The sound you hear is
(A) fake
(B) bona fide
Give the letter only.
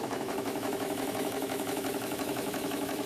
A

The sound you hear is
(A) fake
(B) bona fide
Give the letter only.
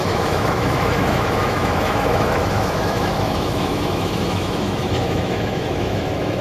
A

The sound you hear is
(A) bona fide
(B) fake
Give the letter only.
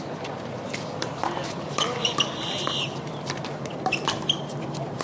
B